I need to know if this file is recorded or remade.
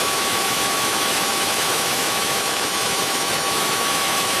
remade